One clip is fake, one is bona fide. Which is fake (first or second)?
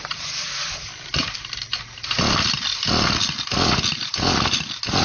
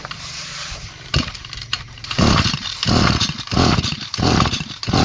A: second